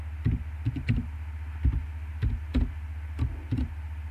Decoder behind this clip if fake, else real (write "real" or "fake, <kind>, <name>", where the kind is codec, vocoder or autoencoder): real